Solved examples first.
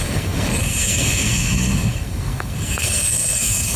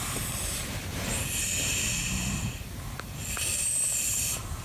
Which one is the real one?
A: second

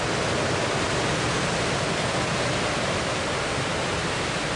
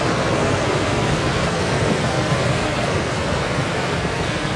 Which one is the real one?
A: first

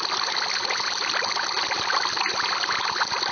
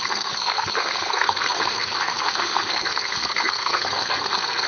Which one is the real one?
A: first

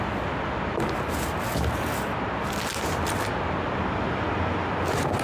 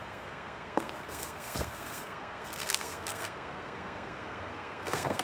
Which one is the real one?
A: first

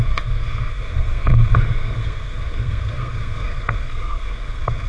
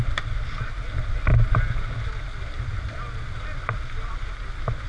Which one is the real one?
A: second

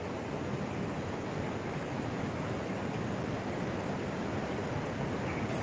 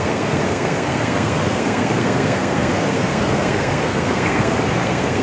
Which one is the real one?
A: first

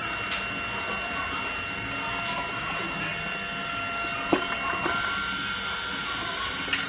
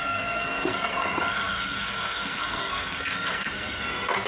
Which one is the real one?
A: first